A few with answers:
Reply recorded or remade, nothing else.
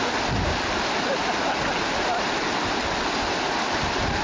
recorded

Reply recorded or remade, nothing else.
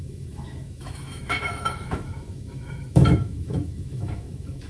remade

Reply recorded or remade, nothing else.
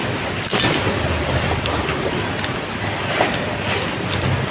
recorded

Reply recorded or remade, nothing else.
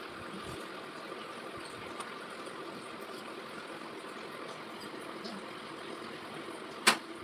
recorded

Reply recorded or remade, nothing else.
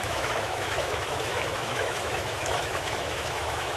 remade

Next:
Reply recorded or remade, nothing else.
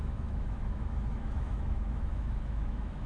remade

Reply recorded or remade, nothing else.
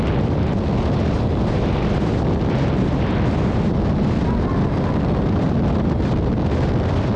recorded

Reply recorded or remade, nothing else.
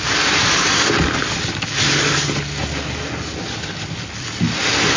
recorded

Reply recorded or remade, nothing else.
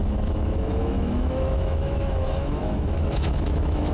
remade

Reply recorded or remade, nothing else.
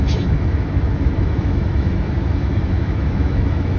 remade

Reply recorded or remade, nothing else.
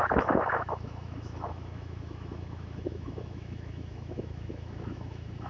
remade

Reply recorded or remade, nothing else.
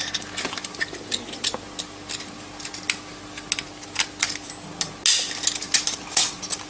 recorded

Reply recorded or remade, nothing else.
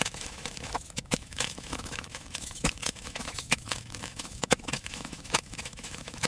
remade